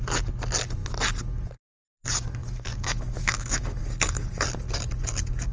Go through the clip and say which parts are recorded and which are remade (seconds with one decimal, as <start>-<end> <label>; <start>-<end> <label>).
0.0-2.4 recorded; 2.4-3.8 remade; 3.8-5.5 recorded